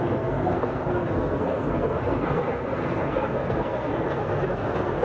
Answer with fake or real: fake